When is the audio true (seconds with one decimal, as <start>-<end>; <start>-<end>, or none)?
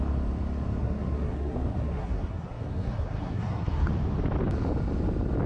0.0-0.8; 3.9-5.5